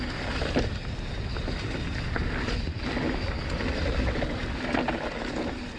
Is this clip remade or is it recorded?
recorded